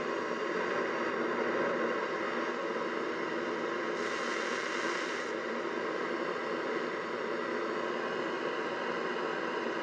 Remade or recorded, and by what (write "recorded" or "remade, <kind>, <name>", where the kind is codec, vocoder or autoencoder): recorded